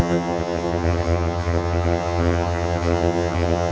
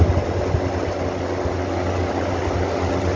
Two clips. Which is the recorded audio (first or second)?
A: second